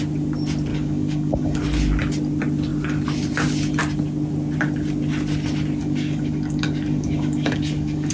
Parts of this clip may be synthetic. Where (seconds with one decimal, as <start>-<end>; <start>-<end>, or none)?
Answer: 0.7-1.6; 5.8-8.1